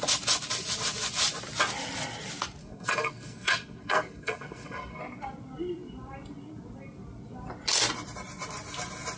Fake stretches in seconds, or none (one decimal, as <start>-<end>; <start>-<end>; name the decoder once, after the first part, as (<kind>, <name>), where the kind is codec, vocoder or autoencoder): 2.6-5.0 (codec, SNAC)